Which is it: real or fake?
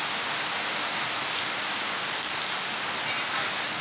real